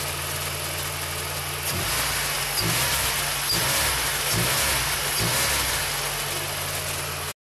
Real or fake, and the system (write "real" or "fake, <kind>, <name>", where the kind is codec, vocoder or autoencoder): real